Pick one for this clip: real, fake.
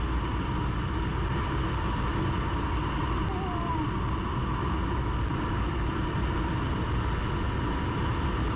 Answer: real